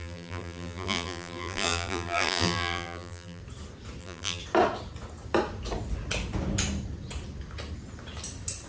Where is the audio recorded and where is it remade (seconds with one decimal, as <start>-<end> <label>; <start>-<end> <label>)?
0.0-3.4 remade; 3.4-4.0 recorded; 4.0-4.4 remade; 4.4-8.7 recorded